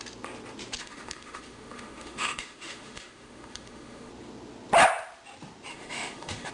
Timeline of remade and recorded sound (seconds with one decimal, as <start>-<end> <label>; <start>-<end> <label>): 0.0-0.8 recorded; 0.8-4.1 remade; 4.1-5.7 recorded; 5.7-6.5 remade